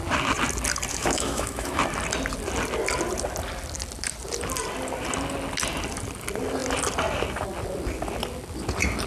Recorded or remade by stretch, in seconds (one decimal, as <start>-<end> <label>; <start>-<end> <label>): 0.0-0.9 recorded; 0.9-1.8 remade; 1.8-9.1 recorded